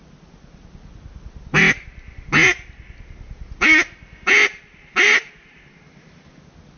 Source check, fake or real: real